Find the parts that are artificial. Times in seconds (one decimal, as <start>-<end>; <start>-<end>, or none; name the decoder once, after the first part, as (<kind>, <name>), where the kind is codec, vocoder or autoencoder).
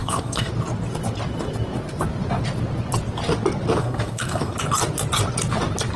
0.0-0.5 (codec, SNAC); 3.8-4.6